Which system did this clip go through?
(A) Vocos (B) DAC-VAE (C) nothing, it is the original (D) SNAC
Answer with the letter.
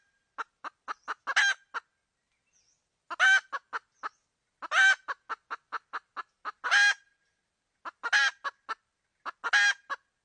C